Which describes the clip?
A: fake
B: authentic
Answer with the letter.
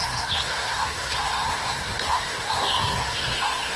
A